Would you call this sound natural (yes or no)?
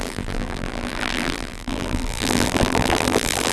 no